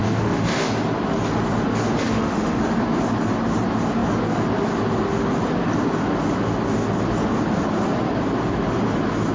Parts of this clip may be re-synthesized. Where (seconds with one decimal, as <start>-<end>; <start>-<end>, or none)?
0.0-0.7; 2.0-2.6